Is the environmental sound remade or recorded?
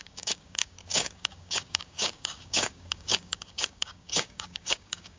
remade